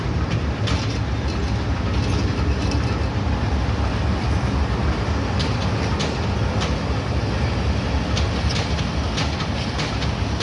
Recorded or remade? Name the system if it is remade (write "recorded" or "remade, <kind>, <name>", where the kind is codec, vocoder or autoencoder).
recorded